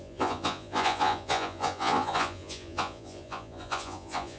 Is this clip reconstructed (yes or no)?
yes